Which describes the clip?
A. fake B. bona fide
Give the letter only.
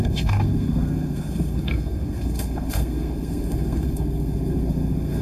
A